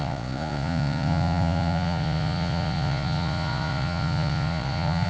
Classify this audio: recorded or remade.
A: remade